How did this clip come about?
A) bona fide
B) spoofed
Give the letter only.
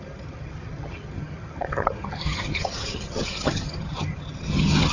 B